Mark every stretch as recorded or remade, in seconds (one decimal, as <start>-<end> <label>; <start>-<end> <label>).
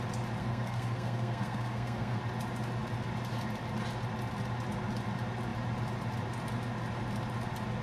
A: 0.0-0.4 recorded; 0.4-2.2 remade; 2.2-7.8 recorded